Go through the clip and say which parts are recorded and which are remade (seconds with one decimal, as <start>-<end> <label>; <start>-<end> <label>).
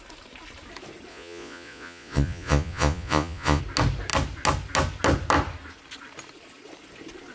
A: 0.0-1.1 recorded; 1.1-3.6 remade; 3.6-7.3 recorded